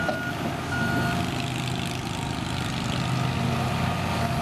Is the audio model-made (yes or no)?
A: no